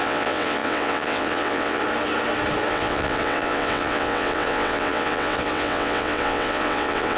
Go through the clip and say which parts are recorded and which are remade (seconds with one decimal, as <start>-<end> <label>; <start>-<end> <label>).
0.0-1.8 remade; 1.8-2.7 recorded; 2.7-7.2 remade